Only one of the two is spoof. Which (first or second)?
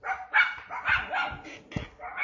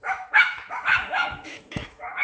second